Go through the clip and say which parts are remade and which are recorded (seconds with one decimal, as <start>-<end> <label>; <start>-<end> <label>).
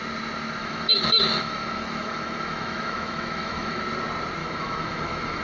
0.0-0.6 recorded; 0.6-3.8 remade; 3.8-4.4 recorded; 4.4-5.4 remade